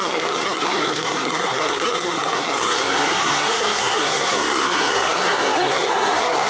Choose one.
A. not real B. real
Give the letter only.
A